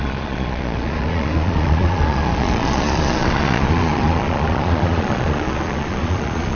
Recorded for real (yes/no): no